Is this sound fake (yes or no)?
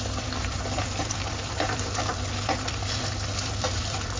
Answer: yes